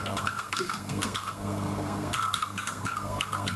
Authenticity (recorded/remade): remade